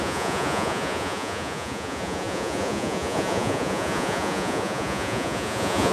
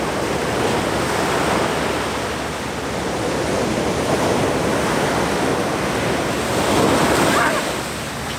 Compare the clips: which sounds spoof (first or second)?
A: first